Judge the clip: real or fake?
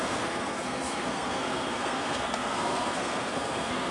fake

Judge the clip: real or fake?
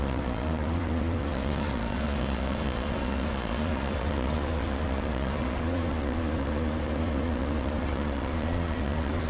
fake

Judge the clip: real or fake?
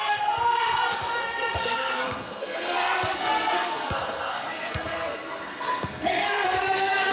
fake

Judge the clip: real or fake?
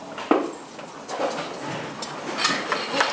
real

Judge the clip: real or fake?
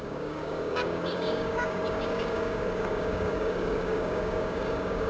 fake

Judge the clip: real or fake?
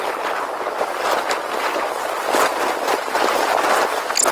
real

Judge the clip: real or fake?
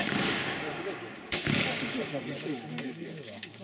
fake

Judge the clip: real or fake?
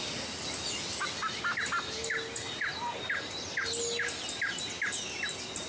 real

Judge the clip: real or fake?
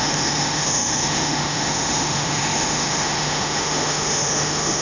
fake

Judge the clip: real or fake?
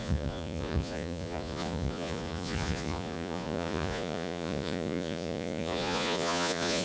fake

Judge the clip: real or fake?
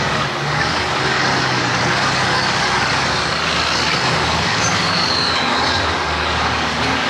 fake